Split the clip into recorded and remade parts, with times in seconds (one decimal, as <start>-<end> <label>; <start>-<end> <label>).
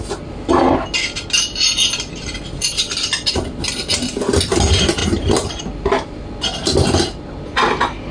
0.0-8.1 recorded